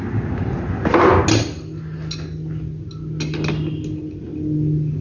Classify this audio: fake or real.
real